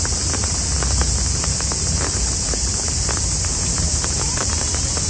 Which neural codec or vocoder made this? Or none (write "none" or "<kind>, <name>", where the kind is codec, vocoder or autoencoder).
vocoder, BigVGAN v2